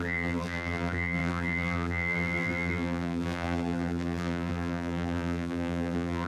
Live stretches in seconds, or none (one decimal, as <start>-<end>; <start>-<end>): none